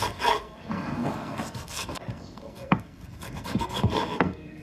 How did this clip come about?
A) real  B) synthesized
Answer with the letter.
B